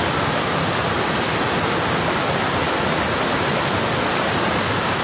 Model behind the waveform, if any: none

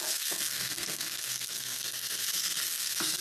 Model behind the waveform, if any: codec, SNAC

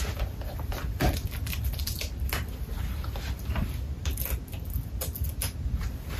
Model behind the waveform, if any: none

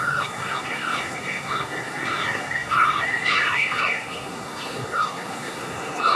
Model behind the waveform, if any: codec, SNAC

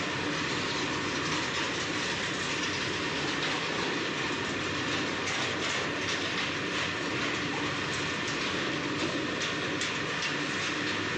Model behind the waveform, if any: none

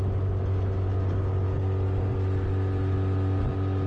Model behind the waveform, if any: none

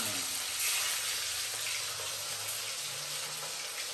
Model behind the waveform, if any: none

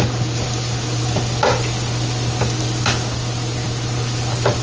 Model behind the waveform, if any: none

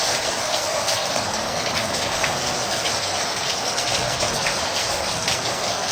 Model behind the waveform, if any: codec, SNAC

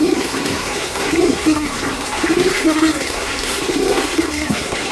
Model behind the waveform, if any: codec, SNAC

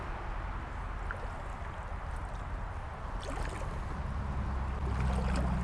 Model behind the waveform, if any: none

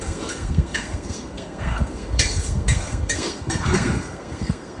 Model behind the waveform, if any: codec, SNAC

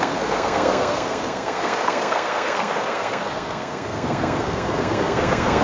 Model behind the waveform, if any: codec, SNAC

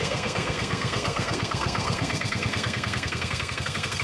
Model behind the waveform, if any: codec, SNAC